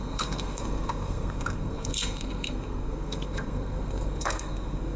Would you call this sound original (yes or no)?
no